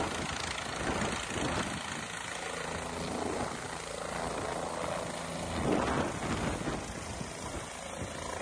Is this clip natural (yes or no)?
yes